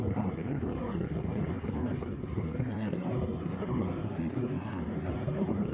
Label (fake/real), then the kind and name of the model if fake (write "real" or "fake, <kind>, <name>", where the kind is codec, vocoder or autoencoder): fake, codec, SNAC